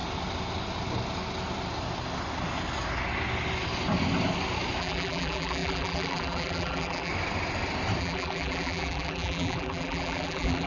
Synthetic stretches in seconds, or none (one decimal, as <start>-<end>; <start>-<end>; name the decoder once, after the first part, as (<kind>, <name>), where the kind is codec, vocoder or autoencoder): 4.8-7.1 (vocoder, BigVGAN v2); 8.0-10.7